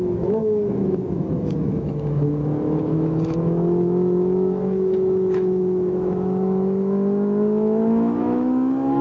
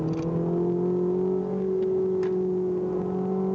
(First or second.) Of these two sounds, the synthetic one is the first